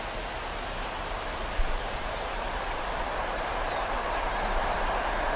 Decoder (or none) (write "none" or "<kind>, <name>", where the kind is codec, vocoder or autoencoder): none